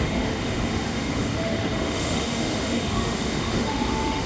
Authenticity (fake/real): fake